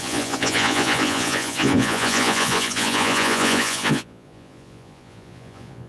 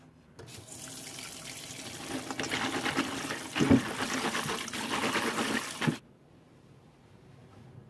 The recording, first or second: second